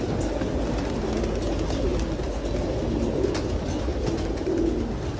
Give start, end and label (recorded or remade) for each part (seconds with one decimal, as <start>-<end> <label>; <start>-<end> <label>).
0.0-5.2 recorded

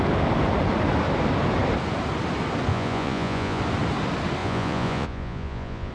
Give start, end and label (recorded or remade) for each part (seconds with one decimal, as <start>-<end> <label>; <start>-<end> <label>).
0.0-2.7 recorded; 2.7-3.6 remade; 3.6-4.4 recorded; 4.4-5.9 remade

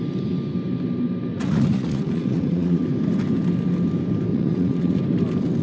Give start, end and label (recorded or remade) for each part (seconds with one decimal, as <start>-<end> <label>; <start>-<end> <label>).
0.0-1.3 recorded; 1.3-2.9 remade; 2.9-4.3 recorded; 4.3-5.0 remade; 5.0-5.6 recorded

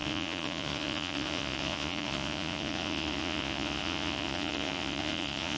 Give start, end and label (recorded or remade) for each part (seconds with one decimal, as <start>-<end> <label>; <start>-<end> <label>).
0.0-5.6 remade

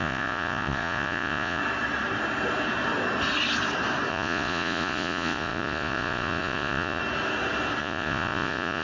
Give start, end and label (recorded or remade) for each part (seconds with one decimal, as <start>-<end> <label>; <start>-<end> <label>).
0.0-1.6 remade; 1.6-4.1 recorded; 4.1-7.0 remade; 7.0-7.8 recorded; 7.8-8.8 remade

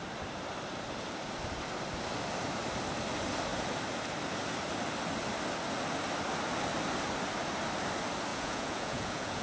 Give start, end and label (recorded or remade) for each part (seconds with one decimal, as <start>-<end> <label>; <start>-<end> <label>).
0.0-8.3 recorded; 8.3-9.4 remade

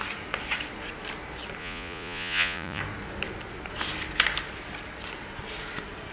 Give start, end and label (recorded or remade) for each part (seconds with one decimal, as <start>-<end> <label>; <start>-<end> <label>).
0.0-1.6 recorded; 1.6-2.8 remade; 2.8-6.1 recorded